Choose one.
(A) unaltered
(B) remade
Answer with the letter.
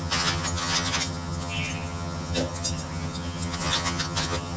B